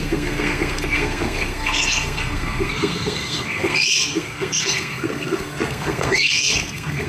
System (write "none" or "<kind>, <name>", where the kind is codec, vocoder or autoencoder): codec, SNAC